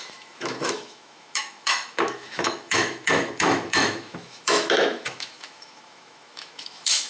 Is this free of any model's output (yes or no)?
no